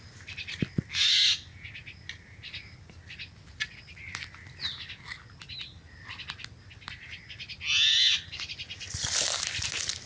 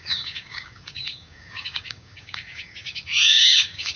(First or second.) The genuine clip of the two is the first